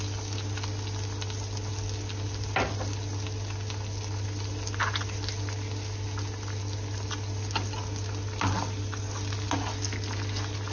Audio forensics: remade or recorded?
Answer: recorded